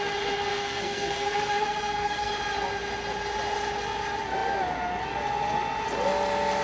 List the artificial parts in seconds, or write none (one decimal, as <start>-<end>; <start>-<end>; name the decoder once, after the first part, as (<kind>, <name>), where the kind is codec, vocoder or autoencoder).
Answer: 0.5-2.3 (codec, SNAC)